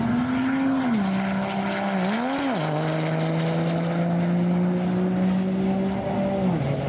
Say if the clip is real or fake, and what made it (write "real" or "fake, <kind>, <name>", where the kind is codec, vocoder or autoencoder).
real